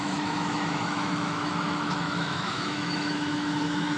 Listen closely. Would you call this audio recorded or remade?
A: remade